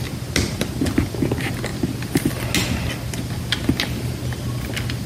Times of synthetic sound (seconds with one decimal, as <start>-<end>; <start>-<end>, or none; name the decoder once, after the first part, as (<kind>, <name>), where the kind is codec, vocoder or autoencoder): none